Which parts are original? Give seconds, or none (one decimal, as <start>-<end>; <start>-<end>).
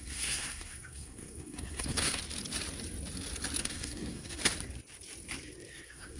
2.2-3.6; 4.4-5.7